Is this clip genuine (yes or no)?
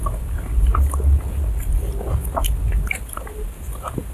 yes